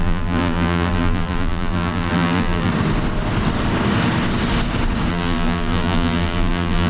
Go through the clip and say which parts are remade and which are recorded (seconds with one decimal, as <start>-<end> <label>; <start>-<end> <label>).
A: 0.0-2.7 remade; 2.7-5.1 recorded; 5.1-6.9 remade